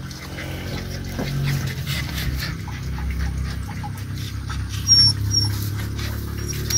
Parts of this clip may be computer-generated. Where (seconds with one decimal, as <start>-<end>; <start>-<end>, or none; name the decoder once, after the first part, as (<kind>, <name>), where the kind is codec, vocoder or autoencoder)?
none